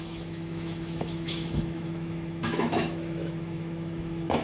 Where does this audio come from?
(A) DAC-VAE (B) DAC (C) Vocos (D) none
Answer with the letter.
A